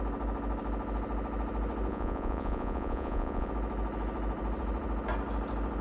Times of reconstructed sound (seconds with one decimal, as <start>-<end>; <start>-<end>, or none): 1.9-3.5